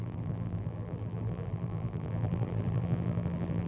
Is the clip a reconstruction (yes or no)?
yes